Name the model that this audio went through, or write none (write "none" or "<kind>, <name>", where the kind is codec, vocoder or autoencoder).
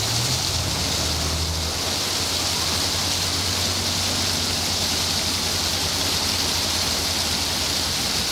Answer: none